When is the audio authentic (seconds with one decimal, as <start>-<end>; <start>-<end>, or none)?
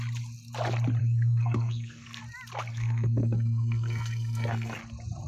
0.0-1.0; 2.2-2.7; 4.8-5.3